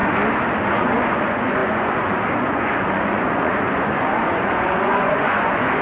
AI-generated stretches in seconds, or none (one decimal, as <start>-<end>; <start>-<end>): 0.7-5.8